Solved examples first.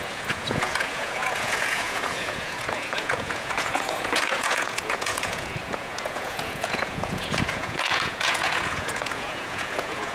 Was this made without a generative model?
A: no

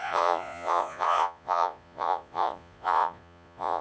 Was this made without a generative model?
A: no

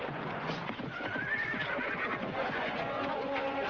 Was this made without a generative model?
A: no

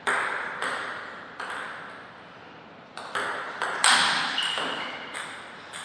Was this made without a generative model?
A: yes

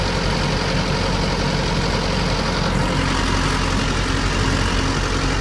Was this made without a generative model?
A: yes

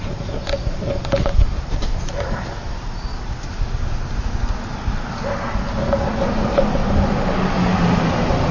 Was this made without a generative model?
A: yes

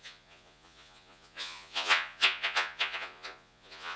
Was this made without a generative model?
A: no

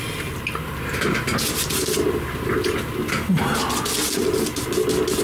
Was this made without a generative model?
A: yes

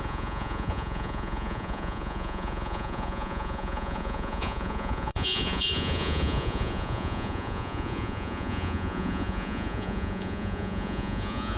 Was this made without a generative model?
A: no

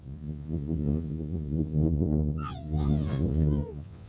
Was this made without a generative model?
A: no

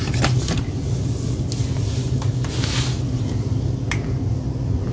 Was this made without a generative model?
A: yes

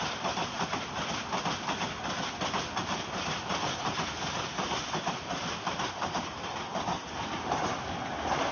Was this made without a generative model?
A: yes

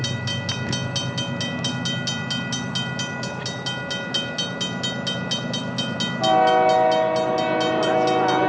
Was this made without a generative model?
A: yes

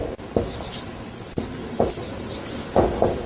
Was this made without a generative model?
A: yes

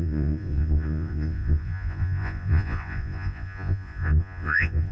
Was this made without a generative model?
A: no